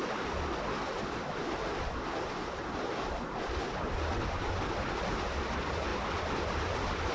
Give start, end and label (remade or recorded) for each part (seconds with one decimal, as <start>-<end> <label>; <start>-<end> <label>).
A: 0.0-2.1 remade; 2.1-5.1 recorded; 5.1-7.1 remade